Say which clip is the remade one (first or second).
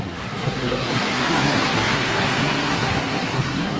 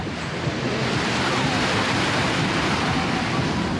first